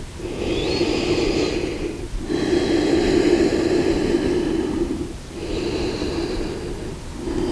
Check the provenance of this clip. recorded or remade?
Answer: recorded